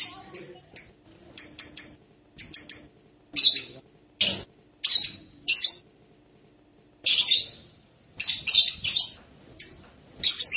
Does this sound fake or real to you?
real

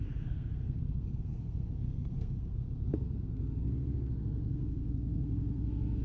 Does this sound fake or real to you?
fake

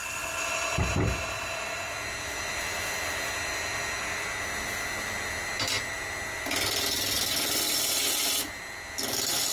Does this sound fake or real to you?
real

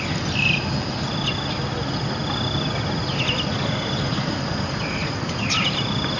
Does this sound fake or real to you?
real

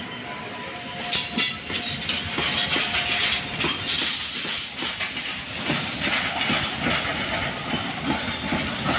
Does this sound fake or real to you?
real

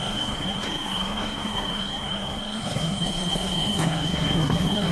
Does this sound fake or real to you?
fake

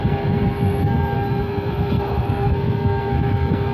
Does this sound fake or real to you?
fake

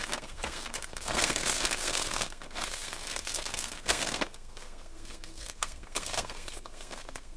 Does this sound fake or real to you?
fake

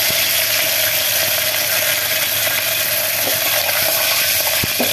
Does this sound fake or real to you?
real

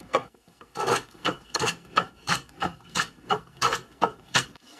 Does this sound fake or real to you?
fake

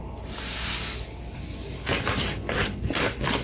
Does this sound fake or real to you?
real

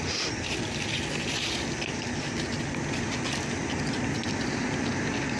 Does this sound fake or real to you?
real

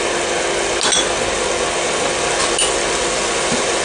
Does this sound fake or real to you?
real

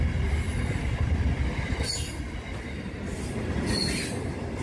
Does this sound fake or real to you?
real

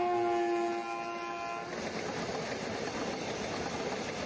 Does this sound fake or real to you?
real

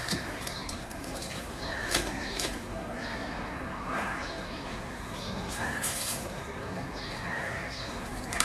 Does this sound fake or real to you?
fake